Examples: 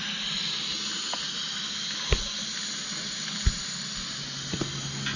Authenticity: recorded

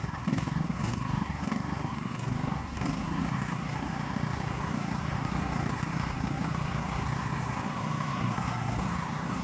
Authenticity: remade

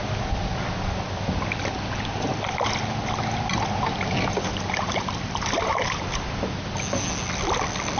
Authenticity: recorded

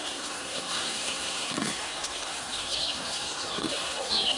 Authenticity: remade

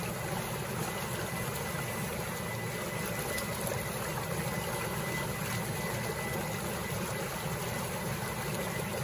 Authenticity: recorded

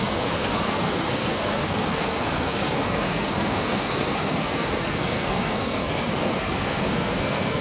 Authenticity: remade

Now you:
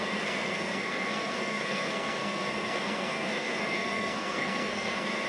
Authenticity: remade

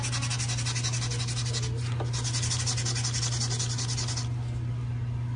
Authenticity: recorded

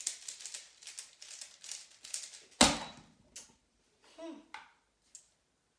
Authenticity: recorded